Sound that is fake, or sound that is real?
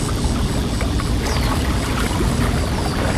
real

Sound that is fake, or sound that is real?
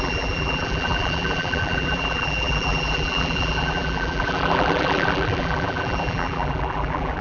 fake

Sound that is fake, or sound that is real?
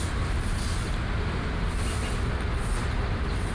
real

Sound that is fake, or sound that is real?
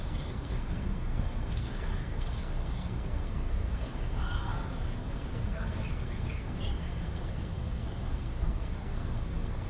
fake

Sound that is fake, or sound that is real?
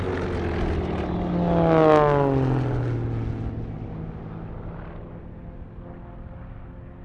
real